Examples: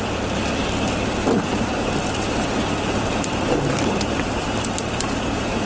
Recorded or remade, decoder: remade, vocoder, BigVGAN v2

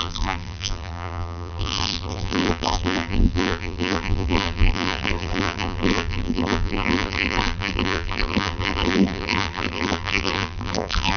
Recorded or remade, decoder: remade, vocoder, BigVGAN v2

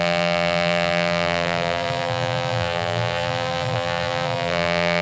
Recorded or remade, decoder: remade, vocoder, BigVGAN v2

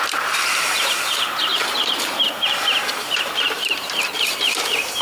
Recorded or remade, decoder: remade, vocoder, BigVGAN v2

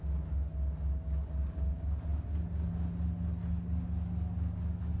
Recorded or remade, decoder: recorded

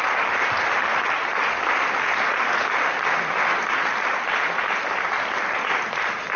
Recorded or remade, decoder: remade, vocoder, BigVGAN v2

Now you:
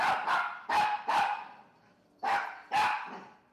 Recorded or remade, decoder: recorded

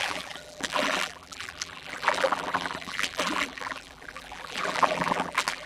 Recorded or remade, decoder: remade, vocoder, BigVGAN v2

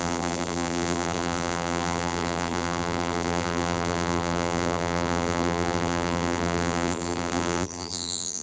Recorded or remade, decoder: remade, vocoder, BigVGAN v2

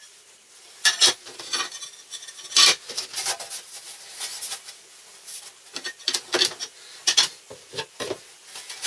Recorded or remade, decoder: recorded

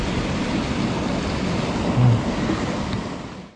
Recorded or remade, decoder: recorded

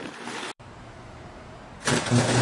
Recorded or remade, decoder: remade, vocoder, BigVGAN v2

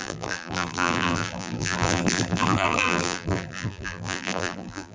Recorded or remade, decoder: remade, vocoder, BigVGAN v2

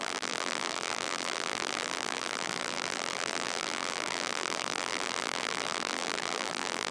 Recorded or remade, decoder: remade, vocoder, BigVGAN v2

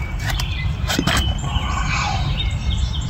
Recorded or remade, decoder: remade, vocoder, BigVGAN v2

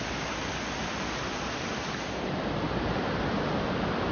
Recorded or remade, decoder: recorded